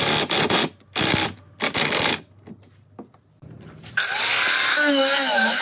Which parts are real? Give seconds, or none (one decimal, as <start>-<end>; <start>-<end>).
0.0-4.7